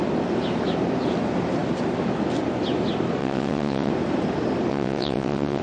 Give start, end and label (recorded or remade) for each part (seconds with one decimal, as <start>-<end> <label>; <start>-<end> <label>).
0.0-3.2 recorded; 3.2-3.9 remade; 3.9-4.7 recorded; 4.7-5.6 remade